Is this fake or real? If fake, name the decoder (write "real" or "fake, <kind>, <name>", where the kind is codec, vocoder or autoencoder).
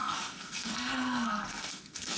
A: fake, codec, SNAC